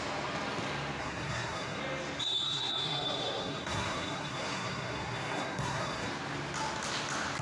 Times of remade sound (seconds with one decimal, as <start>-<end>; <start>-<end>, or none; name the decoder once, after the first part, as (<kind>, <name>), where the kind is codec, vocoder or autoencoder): 1.0-1.8 (codec, SNAC); 2.2-6.1